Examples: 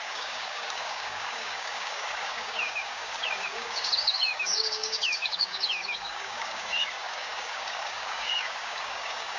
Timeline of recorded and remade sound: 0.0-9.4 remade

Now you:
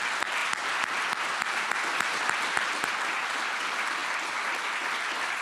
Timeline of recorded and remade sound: 0.0-5.4 recorded

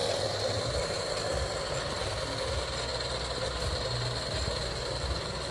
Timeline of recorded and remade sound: 0.0-5.5 recorded

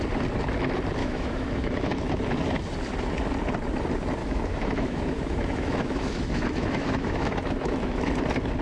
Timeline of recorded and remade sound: 0.0-1.0 recorded; 1.0-2.2 remade; 2.2-4.2 recorded; 4.2-8.1 remade; 8.1-8.6 recorded